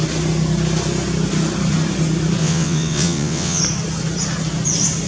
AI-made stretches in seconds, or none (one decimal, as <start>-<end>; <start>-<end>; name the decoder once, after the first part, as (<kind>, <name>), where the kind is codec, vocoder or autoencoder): 2.4-3.6 (vocoder, WaveNeXt)